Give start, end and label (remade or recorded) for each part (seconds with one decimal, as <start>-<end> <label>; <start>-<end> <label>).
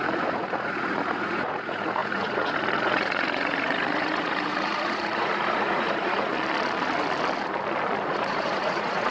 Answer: 0.0-6.3 remade; 6.3-8.0 recorded; 8.0-9.1 remade